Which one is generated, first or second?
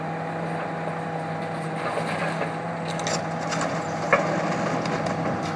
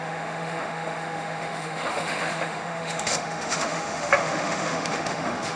second